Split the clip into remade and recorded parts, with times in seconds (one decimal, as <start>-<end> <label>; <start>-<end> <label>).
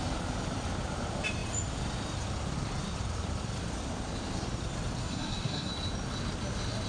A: 0.0-5.0 recorded; 5.0-5.7 remade; 5.7-6.9 recorded